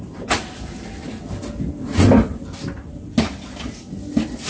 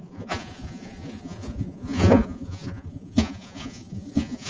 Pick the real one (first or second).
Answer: first